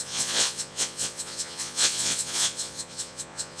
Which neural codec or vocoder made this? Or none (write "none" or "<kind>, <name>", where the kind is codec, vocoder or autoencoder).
vocoder, Vocos